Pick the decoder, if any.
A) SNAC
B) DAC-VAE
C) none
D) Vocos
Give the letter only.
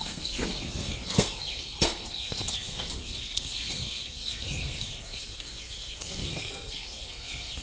A